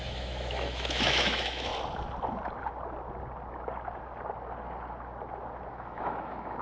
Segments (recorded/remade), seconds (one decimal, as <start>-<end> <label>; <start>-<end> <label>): 0.0-1.7 remade; 1.7-5.7 recorded; 5.7-6.6 remade